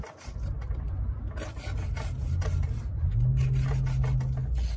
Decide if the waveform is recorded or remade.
recorded